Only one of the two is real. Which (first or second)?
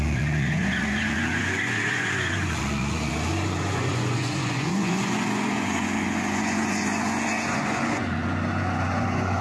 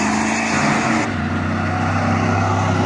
second